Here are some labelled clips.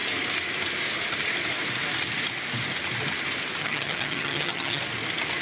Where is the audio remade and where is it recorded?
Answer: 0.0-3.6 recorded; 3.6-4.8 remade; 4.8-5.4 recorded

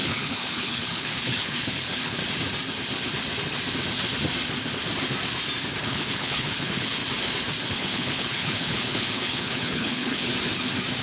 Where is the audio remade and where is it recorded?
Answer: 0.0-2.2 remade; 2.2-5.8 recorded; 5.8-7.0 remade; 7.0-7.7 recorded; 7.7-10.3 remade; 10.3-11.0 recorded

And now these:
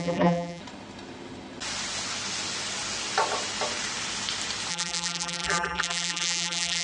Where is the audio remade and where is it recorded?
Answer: 0.0-0.6 remade; 0.6-4.7 recorded; 4.7-6.8 remade

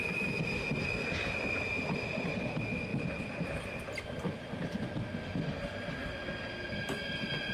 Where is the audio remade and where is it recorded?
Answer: 0.0-2.9 recorded; 2.9-4.4 remade; 4.4-7.5 recorded

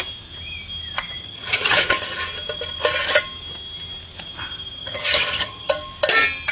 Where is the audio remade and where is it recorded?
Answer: 0.0-1.2 recorded; 1.2-2.2 remade; 2.2-4.8 recorded; 4.8-5.7 remade; 5.7-6.5 recorded

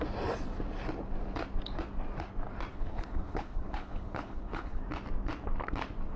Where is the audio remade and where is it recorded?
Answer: 0.0-2.7 recorded; 2.7-4.8 remade; 4.8-6.2 recorded

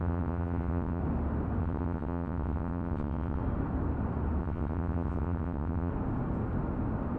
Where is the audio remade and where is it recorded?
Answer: 0.0-1.0 remade; 1.0-1.6 recorded; 1.6-3.4 remade; 3.4-4.4 recorded; 4.4-5.9 remade; 5.9-7.2 recorded

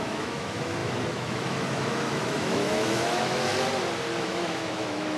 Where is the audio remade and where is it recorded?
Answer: 0.0-3.5 remade; 3.5-4.2 recorded; 4.2-5.2 remade